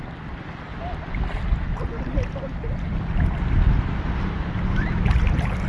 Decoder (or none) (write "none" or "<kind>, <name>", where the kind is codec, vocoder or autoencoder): none